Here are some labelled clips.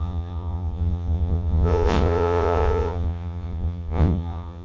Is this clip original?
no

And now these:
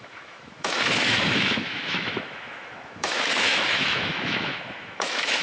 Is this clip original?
no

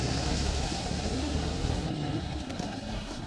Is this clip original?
no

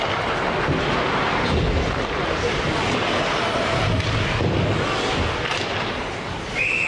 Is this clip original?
yes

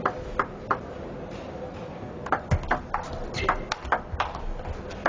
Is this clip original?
yes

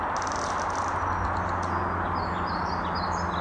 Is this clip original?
yes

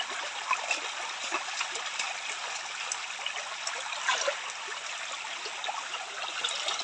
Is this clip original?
yes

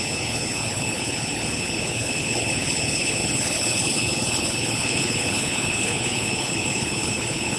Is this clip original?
no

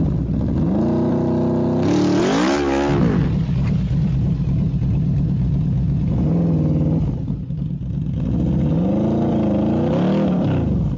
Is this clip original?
yes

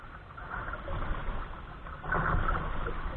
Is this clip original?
yes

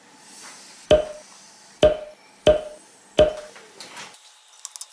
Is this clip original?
yes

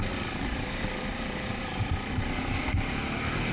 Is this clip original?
yes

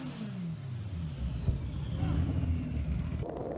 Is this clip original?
yes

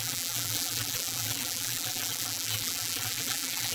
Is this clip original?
no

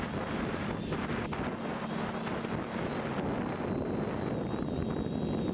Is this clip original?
yes